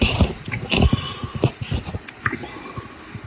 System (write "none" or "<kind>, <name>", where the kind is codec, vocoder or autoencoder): none